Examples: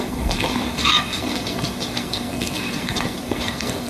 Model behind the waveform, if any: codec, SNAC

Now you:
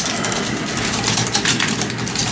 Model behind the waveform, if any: vocoder, BigVGAN v2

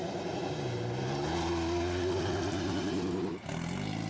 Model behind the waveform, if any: none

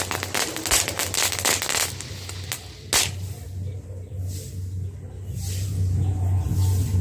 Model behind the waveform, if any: none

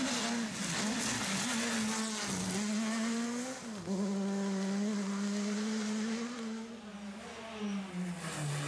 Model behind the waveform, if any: none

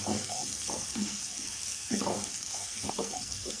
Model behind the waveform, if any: codec, SNAC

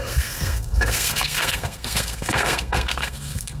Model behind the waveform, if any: codec, SNAC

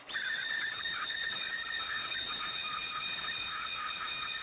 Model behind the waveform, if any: vocoder, WaveNeXt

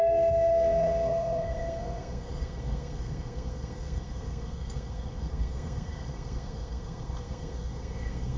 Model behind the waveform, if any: codec, SNAC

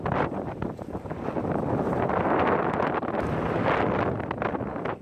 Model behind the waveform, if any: none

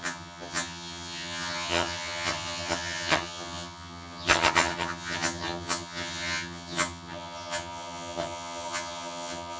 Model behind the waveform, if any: vocoder, HiFi-GAN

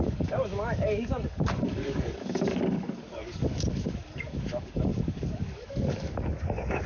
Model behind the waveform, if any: codec, DAC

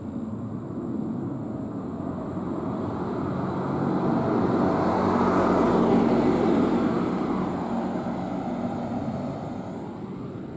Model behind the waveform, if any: none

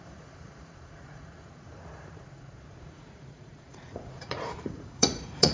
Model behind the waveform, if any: vocoder, Vocos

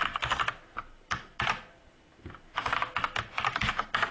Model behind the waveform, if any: none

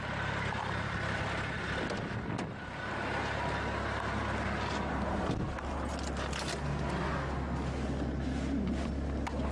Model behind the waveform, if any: none